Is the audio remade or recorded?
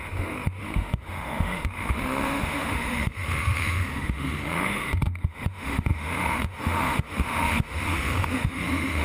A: remade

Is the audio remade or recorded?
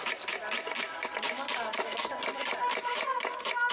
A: recorded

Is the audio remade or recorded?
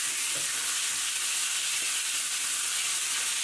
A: recorded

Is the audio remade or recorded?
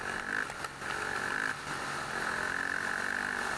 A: recorded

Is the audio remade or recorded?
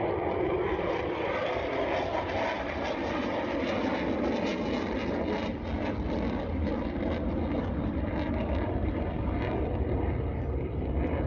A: recorded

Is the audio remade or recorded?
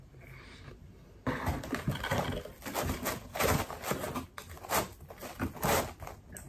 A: recorded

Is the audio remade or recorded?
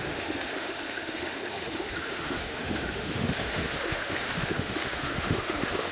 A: remade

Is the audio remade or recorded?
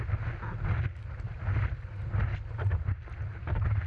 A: recorded